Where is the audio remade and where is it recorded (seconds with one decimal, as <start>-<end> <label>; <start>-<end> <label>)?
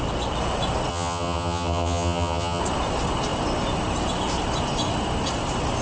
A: 0.0-0.9 recorded; 0.9-2.6 remade; 2.6-5.8 recorded